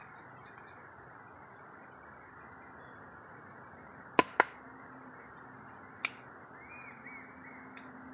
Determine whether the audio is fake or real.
real